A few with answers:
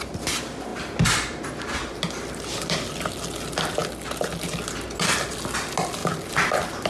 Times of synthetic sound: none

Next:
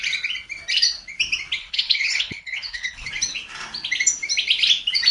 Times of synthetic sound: 1.6-3.1 (codec, HILCodec)

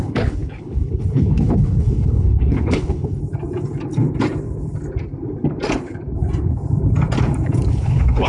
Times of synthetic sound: 0.0-3.2 (codec, HILCodec); 7.7-8.3

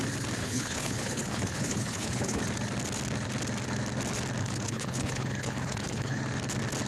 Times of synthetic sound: 0.4-2.4 (codec, HILCodec); 4.4-6.2

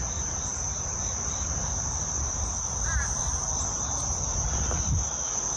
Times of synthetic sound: none

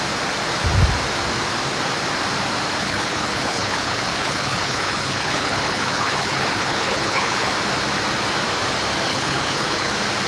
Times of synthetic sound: 2.8-7.5 (codec, HILCodec); 9.1-9.9

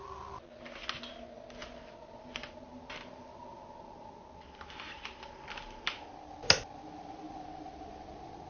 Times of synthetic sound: none